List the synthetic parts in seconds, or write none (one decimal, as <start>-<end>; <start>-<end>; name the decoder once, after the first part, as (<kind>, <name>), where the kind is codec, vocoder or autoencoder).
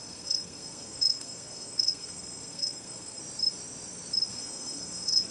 0.0-3.2 (codec, SNAC); 4.3-5.3